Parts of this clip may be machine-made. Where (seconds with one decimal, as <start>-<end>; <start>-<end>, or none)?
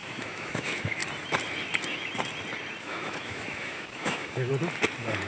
0.0-1.0; 2.8-4.5